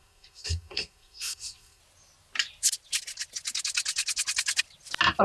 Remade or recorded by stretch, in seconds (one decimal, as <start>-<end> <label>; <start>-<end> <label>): 0.0-1.8 remade; 1.8-5.2 recorded